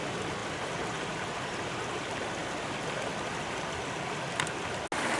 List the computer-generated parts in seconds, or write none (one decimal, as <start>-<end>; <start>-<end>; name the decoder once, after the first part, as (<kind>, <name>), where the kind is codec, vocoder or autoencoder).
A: none